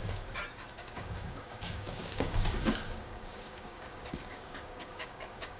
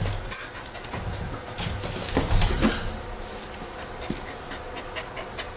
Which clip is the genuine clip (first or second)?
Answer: second